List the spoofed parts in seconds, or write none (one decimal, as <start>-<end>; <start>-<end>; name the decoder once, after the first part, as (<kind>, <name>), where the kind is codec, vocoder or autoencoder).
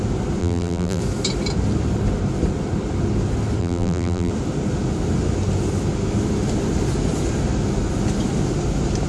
0.4-1.0 (vocoder, BigVGAN v2); 3.6-4.3